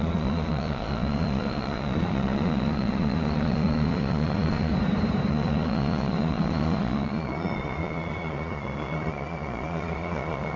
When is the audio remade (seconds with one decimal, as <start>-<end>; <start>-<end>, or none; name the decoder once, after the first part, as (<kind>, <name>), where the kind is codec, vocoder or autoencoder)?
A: 0.0-4.7 (vocoder, Vocos); 5.3-10.6